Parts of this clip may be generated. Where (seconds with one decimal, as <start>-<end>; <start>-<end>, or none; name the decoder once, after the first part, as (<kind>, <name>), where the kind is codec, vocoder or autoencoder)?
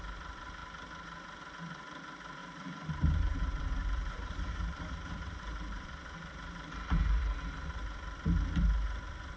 2.4-7.4 (vocoder, BigVGAN v2)